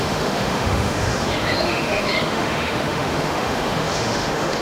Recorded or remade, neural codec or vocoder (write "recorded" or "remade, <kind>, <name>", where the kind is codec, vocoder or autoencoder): remade, autoencoder, DAC-VAE